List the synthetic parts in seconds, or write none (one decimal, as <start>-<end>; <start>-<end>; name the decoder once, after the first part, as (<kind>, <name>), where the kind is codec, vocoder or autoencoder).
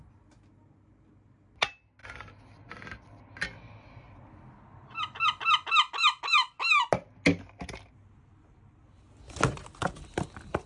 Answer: none